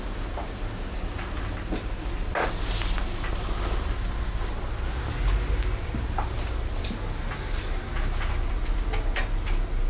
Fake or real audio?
real